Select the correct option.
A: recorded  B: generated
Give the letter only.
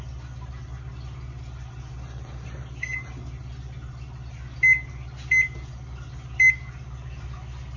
A